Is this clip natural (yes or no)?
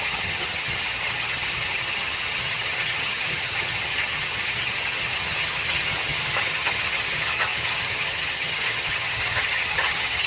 no